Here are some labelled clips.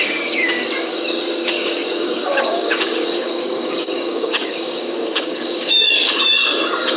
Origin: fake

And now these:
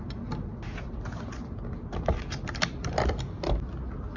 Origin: real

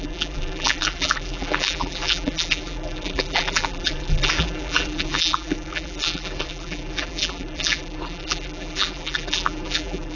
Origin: fake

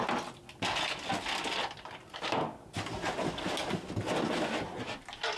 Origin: real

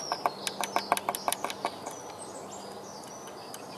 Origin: real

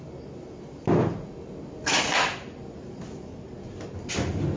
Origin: real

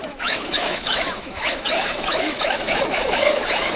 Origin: fake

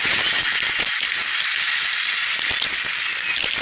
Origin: real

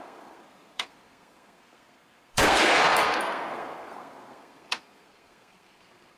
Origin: fake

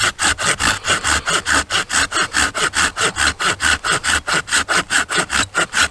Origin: real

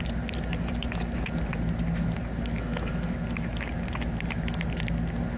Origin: real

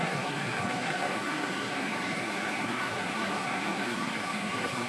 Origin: fake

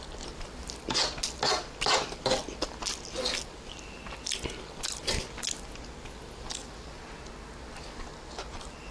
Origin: real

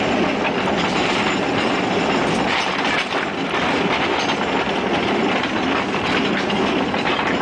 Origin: real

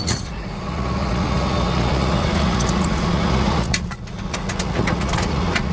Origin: fake